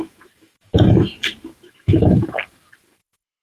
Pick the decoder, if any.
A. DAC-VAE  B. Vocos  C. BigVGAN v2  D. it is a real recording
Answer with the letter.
A